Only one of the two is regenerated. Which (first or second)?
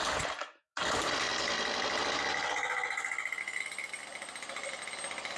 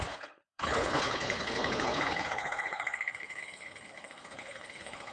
second